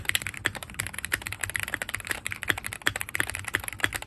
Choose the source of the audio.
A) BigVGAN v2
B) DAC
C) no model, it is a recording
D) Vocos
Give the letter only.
C